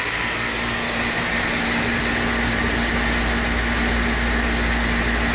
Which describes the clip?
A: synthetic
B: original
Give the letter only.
B